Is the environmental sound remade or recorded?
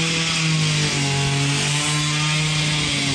recorded